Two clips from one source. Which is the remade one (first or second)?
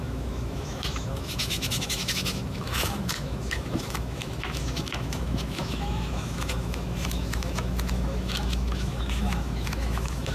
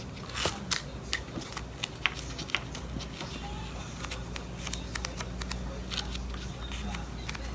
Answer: first